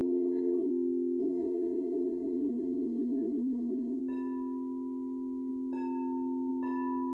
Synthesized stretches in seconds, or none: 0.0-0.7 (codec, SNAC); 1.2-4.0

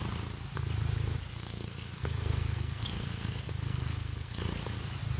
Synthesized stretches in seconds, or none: 1.3-4.4 (codec, SNAC)

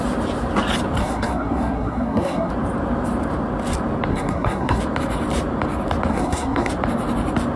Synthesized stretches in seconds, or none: 1.0-2.5 (codec, SNAC); 4.1-4.8; 6.1-6.7

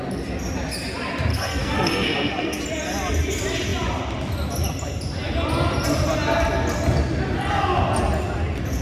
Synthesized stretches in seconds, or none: 1.3-2.6 (codec, SNAC)